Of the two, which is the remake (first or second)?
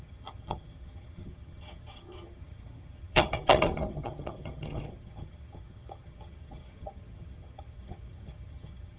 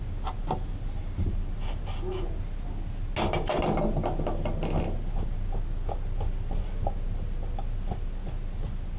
first